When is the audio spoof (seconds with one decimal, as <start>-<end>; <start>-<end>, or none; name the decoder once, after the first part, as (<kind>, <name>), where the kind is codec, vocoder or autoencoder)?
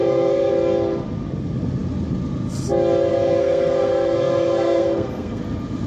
0.0-0.5 (codec, SNAC); 3.1-5.4